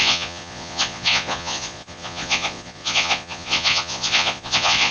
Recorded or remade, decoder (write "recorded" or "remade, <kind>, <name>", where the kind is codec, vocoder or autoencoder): remade, vocoder, Vocos